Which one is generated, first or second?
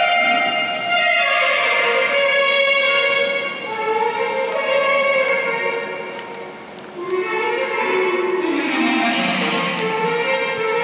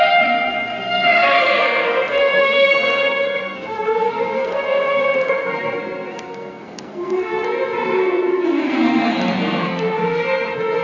second